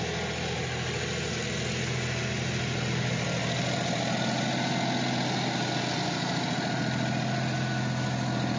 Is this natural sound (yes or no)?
yes